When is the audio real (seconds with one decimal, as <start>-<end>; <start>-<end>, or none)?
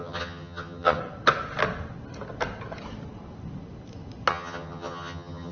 1.0-4.3